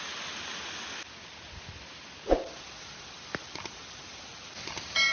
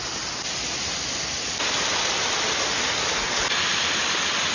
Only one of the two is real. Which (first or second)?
second